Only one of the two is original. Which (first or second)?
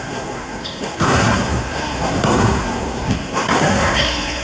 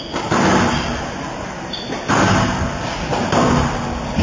second